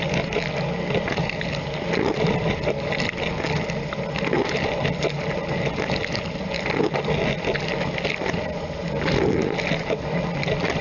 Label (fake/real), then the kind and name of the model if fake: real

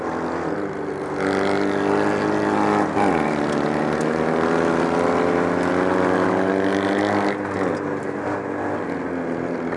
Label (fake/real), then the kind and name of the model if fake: real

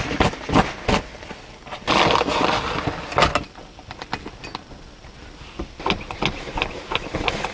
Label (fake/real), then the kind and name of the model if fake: real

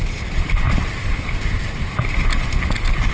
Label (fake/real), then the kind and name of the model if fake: real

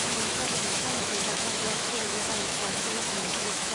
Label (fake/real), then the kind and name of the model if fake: fake, autoencoder, DAC-VAE